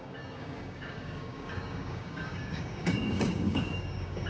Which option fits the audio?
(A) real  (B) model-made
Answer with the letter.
B